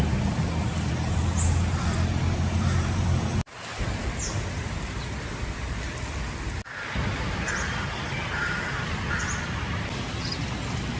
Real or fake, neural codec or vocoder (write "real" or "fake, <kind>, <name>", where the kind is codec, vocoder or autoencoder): real